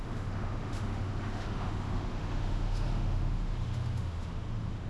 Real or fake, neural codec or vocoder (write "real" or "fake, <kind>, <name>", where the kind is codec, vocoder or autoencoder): fake, autoencoder, DAC-VAE